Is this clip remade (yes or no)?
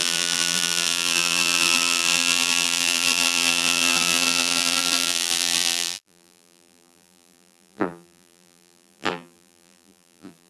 yes